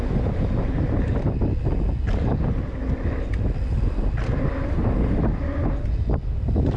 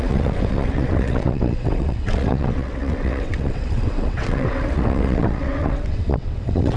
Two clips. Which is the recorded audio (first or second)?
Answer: first